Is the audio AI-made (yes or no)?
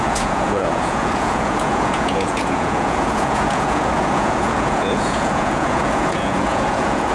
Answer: yes